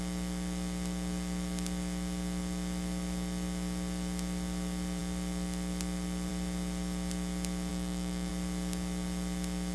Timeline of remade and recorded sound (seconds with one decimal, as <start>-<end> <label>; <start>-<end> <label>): 0.0-7.7 recorded; 7.7-8.3 remade; 8.3-9.7 recorded